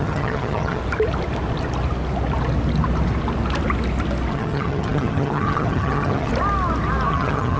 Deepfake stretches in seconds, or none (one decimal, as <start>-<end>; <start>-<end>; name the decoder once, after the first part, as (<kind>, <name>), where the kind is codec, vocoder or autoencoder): 0.0-0.8 (vocoder, HiFi-GAN); 4.3-6.3; 7.1-7.6